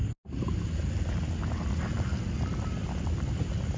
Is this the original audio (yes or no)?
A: yes